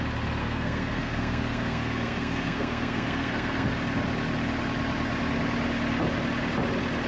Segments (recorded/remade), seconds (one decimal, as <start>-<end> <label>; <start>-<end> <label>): 0.0-0.4 recorded; 0.4-3.7 remade; 3.7-7.1 recorded